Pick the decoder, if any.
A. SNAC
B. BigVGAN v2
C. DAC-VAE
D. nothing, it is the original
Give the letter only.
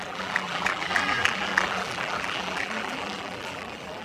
B